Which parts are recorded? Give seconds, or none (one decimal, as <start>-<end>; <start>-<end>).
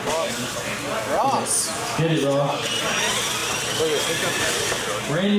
0.0-5.4